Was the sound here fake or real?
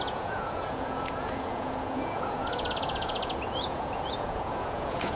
fake